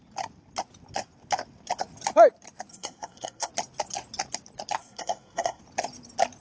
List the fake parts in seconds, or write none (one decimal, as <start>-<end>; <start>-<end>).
2.7-3.5; 4.8-5.6